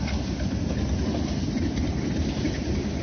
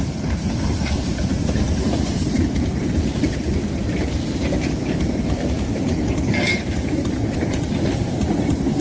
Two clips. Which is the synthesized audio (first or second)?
second